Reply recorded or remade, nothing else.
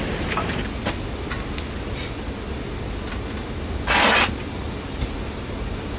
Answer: recorded